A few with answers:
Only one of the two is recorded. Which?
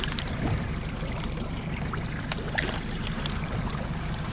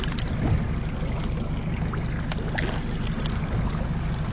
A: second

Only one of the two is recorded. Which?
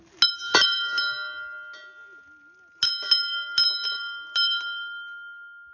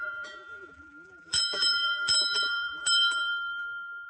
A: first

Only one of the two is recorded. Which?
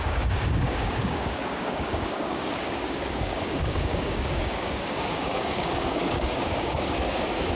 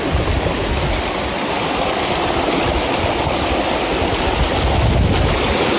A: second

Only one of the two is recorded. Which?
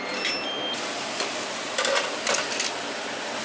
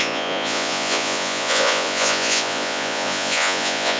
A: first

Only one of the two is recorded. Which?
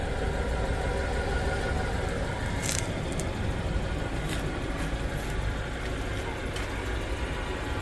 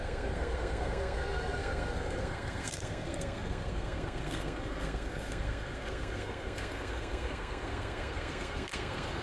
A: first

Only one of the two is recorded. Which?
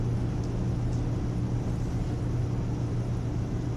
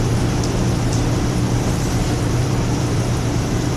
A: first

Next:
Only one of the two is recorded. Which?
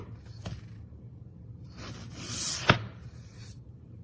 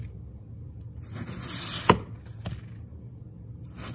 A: second